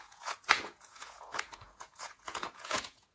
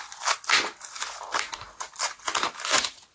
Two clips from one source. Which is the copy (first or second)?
first